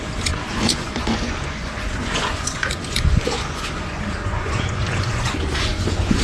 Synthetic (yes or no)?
yes